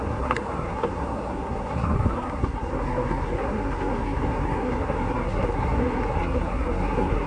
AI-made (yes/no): yes